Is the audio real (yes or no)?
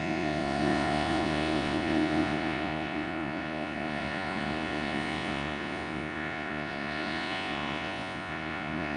no